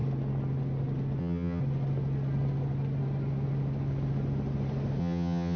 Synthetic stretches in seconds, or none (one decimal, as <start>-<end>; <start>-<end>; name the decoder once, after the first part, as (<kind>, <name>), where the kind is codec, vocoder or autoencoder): 1.2-1.6 (vocoder, HiFi-GAN); 5.0-5.6